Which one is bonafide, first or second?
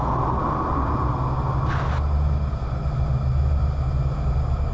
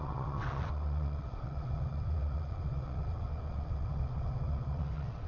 first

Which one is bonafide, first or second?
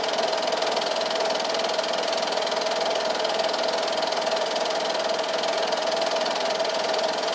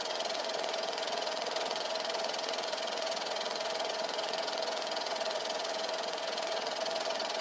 first